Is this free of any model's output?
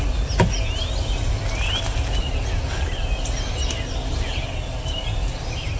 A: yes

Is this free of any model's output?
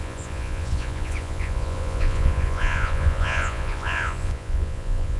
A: no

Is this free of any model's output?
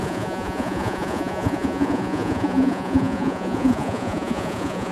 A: no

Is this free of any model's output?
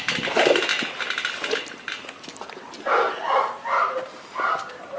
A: yes